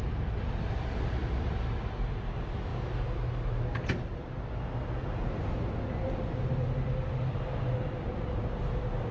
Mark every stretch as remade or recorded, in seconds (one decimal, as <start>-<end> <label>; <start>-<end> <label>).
0.0-9.1 recorded